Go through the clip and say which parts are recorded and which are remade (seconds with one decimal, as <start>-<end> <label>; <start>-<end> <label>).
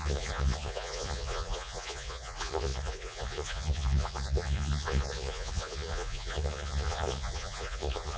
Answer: 0.0-8.2 remade